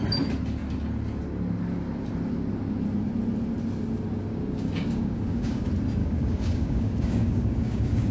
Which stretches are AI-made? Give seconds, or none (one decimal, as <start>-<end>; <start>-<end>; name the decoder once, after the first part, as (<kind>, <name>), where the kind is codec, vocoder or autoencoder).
4.3-5.6 (codec, DAC); 6.0-8.1